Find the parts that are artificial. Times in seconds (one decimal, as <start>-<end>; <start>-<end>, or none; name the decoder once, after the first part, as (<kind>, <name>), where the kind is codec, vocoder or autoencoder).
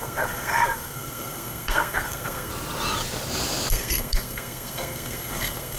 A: 0.0-2.5 (codec, SNAC); 3.7-5.8